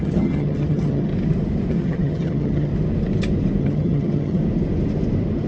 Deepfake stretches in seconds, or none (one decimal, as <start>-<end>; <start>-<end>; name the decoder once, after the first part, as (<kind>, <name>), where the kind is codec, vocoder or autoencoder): 0.0-1.1 (vocoder, HiFi-GAN); 1.7-2.7; 3.6-4.4